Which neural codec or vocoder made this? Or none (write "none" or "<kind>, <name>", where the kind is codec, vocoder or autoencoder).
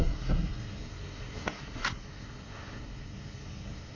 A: codec, SNAC